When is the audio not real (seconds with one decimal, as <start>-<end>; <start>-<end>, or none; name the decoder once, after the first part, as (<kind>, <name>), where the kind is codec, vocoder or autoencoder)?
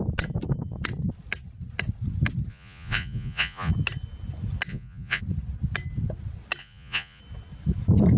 2.5-3.7 (vocoder, Vocos); 4.7-5.2; 6.6-7.2